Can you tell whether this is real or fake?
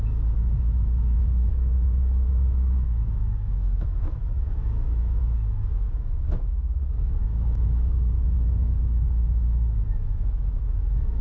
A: fake